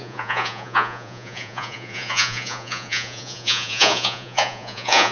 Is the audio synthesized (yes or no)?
yes